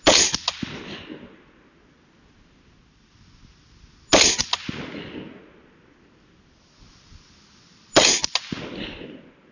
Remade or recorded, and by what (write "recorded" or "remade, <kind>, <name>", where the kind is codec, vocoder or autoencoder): recorded